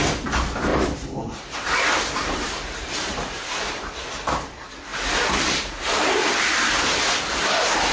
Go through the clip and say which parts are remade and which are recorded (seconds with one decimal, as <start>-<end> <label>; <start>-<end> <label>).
0.0-0.7 recorded; 0.7-3.9 remade; 3.9-4.9 recorded; 4.9-6.2 remade; 6.2-7.9 recorded

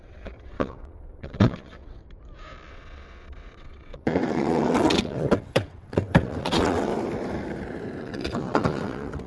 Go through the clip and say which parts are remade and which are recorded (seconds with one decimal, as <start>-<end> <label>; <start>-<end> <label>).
0.0-2.0 remade; 2.0-2.7 recorded; 2.7-6.9 remade; 6.9-8.0 recorded; 8.0-9.3 remade

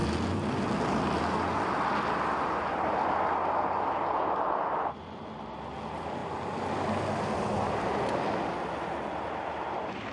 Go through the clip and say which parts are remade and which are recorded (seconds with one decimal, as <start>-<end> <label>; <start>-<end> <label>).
0.0-10.1 recorded

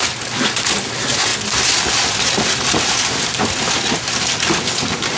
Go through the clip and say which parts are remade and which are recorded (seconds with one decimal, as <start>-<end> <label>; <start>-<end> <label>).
0.0-5.2 recorded